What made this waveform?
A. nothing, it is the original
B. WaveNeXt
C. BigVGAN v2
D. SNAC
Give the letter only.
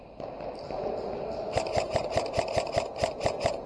A